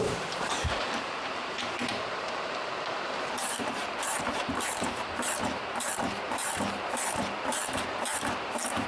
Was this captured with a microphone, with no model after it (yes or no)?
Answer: no